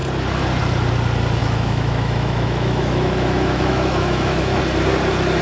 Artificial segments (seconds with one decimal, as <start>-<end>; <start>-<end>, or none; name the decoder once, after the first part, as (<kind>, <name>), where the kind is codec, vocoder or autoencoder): 1.4-4.6 (autoencoder, DAC-VAE)